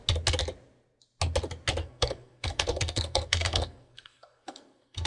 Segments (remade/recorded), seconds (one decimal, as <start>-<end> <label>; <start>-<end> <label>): 0.0-1.8 recorded; 1.8-5.1 remade